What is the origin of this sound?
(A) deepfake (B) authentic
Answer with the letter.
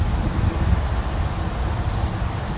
B